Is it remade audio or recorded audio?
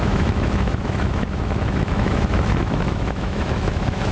remade